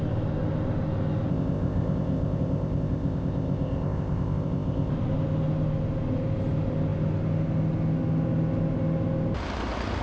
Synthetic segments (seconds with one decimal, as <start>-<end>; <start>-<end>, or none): 1.3-4.9

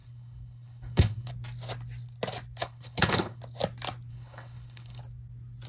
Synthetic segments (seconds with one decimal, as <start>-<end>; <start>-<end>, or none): 0.0-1.3; 2.6-3.4; 4.1-5.0